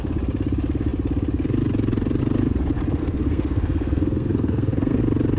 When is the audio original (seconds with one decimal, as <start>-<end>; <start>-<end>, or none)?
0.0-3.0; 5.0-5.4